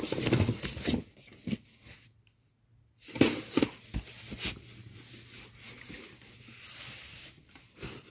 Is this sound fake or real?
real